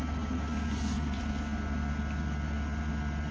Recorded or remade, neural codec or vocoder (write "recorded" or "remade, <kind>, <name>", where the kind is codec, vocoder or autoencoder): recorded